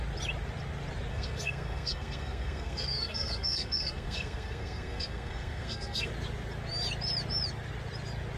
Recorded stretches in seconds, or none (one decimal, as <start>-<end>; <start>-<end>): 0.0-1.1; 6.1-8.4